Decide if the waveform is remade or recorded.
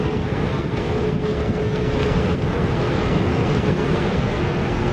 remade